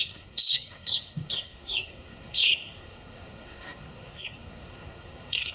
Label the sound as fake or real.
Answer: fake